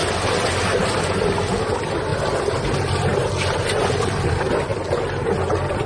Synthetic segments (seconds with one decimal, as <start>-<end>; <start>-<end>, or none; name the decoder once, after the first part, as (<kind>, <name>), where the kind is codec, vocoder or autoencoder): 0.0-0.5 (vocoder, BigVGAN v2); 2.1-4.3